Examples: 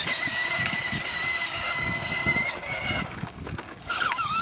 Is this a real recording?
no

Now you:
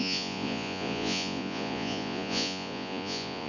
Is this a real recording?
no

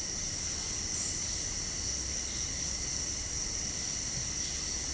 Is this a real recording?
yes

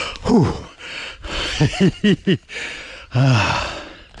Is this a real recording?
yes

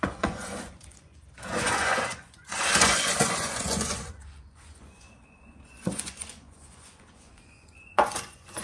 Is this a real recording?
no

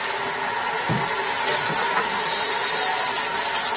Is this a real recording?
yes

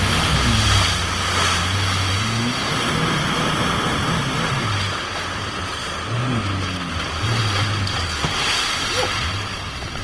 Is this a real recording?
yes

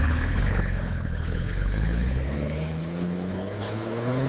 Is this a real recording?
no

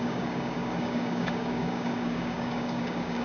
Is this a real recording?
no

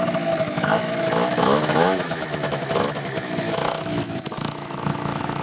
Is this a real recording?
no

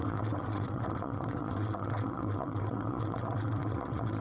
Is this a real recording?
no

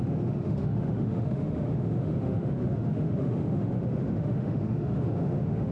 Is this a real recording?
no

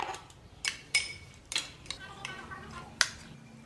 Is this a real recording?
yes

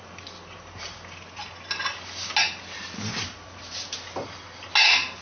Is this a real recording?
yes